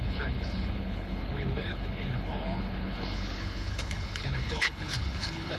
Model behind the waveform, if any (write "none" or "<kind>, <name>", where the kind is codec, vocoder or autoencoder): codec, HILCodec